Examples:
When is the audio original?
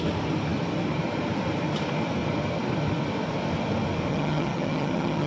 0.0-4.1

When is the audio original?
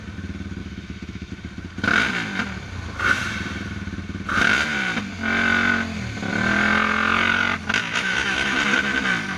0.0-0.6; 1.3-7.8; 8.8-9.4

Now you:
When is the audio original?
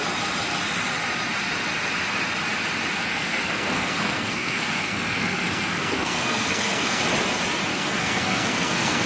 0.0-3.1; 7.0-7.7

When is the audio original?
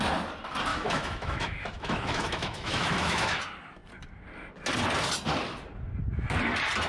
0.0-0.7; 3.4-6.9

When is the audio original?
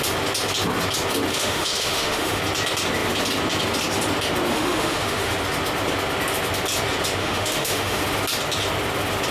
0.0-1.3; 2.4-4.5; 5.3-7.2; 8.0-9.3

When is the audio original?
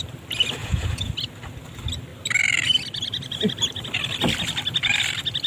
0.0-0.6; 1.1-5.5